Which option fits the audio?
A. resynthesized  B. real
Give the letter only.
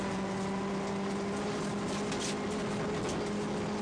B